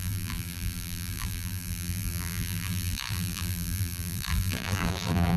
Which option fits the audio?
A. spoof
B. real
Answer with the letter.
A